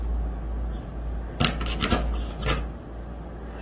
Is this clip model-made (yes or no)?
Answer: no